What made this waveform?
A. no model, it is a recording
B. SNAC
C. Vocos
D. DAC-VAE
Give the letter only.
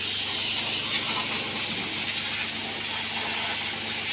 A